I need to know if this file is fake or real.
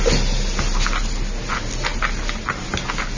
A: real